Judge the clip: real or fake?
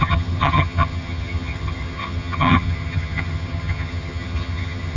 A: fake